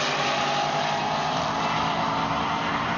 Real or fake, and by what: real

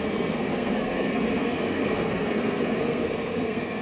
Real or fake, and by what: fake, codec, SNAC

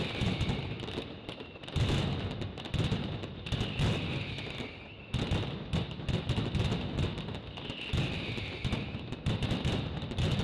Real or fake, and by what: real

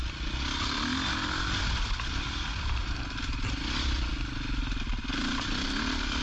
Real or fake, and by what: real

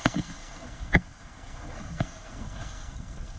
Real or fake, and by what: fake, codec, SNAC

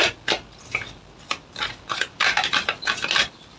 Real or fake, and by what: real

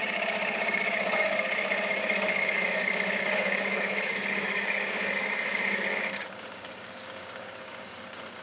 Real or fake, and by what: fake, codec, DAC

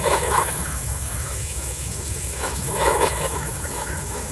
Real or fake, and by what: fake, autoencoder, DAC-VAE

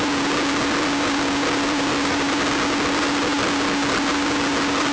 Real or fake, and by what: real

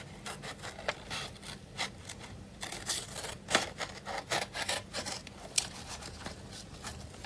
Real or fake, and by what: fake, vocoder, BigVGAN v2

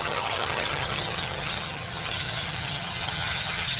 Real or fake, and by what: fake, vocoder, HiFi-GAN